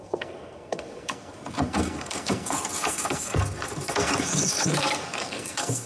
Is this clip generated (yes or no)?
yes